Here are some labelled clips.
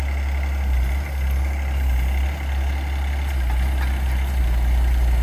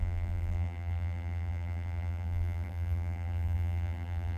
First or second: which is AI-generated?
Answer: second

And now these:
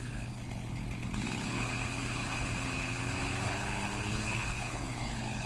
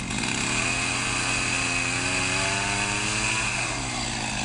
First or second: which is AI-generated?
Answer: first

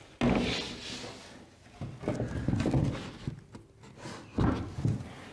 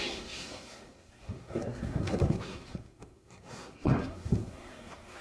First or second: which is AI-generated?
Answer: second